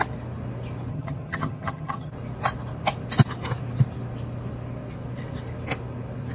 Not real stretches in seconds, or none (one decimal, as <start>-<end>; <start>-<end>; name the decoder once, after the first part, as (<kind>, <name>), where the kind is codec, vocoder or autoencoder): 0.9-2.1 (vocoder, HiFi-GAN)